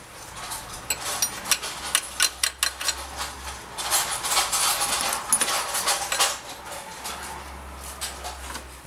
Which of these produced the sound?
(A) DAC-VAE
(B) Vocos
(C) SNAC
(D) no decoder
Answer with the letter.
D